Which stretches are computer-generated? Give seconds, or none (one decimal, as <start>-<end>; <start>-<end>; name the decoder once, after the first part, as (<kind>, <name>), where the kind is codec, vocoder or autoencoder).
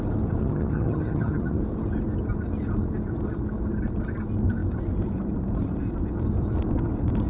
0.4-1.6 (vocoder, HiFi-GAN)